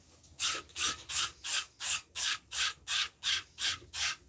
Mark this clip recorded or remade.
remade